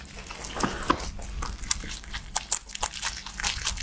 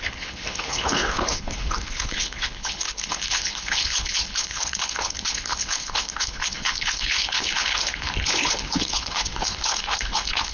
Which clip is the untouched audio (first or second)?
first